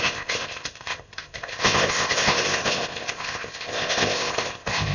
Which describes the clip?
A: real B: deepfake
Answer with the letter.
B